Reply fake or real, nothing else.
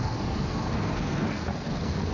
fake